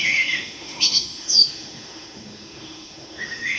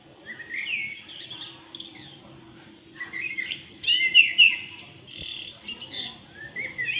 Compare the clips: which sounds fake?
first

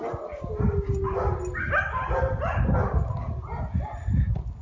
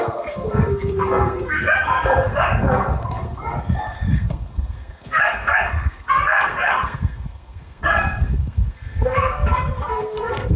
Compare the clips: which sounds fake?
second